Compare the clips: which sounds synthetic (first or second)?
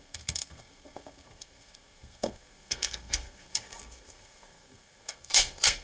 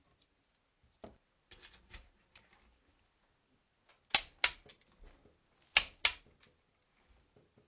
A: first